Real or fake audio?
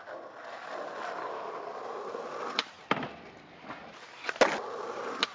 real